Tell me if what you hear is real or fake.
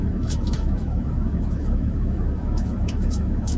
fake